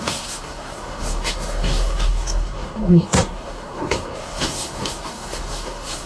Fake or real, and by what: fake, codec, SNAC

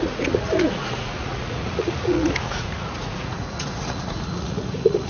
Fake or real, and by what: fake, vocoder, Vocos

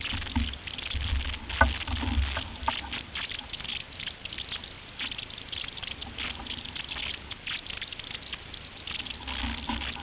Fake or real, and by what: real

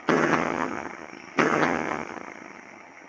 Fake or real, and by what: fake, vocoder, HiFi-GAN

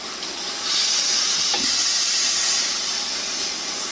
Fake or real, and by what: fake, vocoder, BigVGAN v2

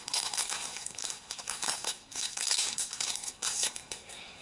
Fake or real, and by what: fake, codec, SNAC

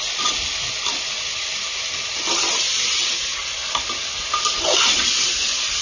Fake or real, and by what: real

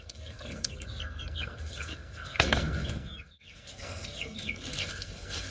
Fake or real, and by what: fake, codec, SNAC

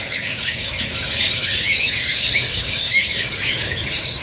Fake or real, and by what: fake, codec, DAC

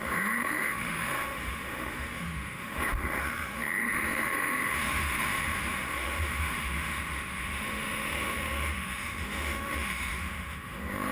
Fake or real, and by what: fake, autoencoder, DAC-VAE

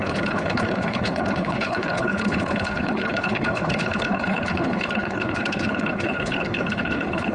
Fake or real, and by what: fake, codec, HILCodec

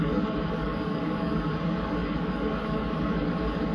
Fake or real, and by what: fake, codec, DAC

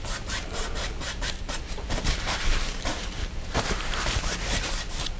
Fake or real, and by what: fake, vocoder, BigVGAN v2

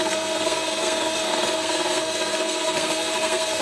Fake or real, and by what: fake, codec, SNAC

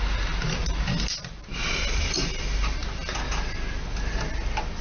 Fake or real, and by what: real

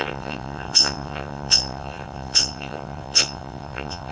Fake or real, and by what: fake, vocoder, WaveNeXt